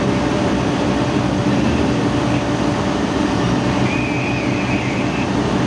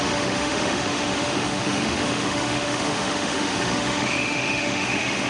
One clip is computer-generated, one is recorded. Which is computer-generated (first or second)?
second